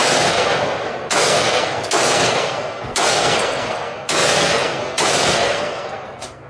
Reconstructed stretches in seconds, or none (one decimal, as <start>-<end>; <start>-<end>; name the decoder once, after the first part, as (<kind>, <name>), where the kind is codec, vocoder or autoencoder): 0.0-6.5 (codec, SNAC)